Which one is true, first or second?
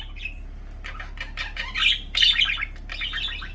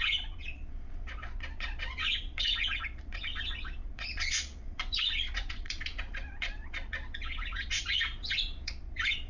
first